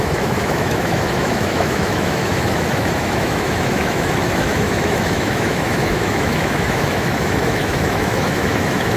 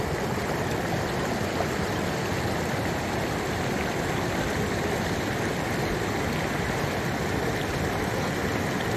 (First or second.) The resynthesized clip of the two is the first